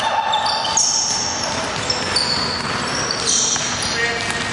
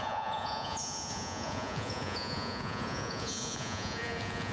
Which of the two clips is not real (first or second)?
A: second